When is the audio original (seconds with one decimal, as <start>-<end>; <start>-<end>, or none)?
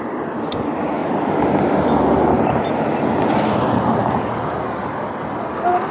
0.0-5.9